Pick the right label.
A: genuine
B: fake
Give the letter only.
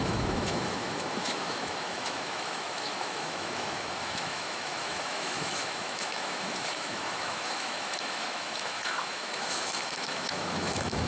B